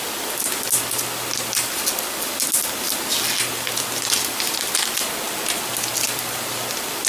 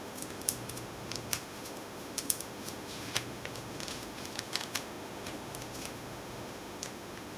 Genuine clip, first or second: first